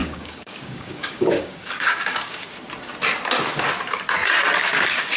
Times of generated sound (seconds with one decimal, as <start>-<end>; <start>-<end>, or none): 0.0-2.5; 4.6-5.2